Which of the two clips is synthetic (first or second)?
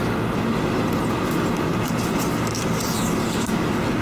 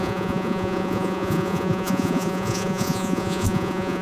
second